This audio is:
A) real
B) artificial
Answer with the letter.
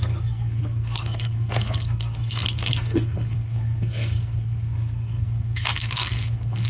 B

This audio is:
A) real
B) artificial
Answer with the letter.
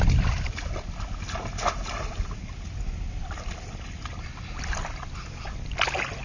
A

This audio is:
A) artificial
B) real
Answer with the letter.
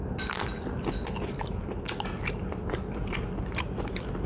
B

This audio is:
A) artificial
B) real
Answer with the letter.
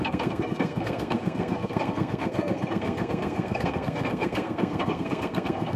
A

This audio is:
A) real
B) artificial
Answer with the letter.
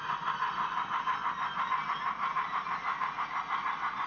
A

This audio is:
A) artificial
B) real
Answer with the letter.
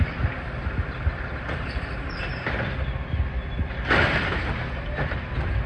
B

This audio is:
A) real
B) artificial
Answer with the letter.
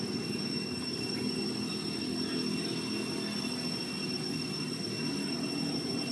A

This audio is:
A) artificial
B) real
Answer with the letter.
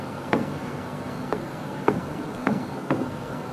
A